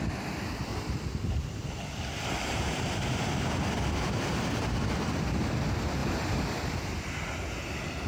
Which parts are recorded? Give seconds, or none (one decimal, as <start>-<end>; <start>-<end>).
0.7-1.9; 6.0-8.1